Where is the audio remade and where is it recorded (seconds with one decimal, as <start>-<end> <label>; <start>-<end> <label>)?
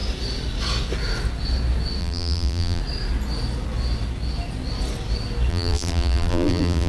0.0-2.0 recorded; 2.0-2.8 remade; 2.8-5.5 recorded; 5.5-6.9 remade